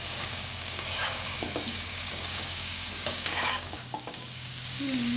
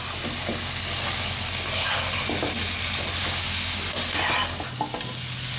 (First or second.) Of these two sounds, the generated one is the first